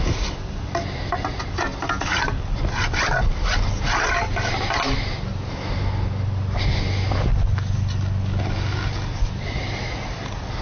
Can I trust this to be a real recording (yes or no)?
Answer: yes